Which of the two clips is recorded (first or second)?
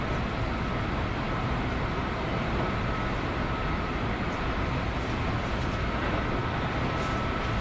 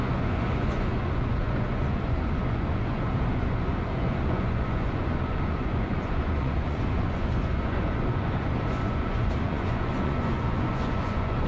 first